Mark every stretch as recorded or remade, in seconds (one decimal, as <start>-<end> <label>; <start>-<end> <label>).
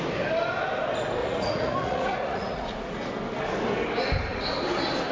0.0-1.2 recorded; 1.2-3.1 remade; 3.1-5.1 recorded